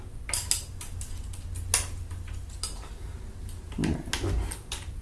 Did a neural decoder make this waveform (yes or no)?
no